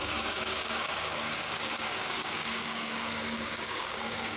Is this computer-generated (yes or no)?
yes